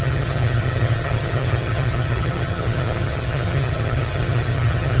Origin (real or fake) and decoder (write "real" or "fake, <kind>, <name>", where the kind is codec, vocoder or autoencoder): fake, vocoder, HiFi-GAN